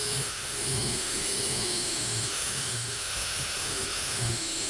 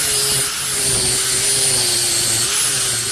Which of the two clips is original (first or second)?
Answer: second